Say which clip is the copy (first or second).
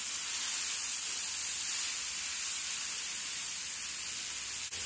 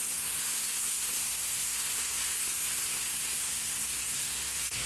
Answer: second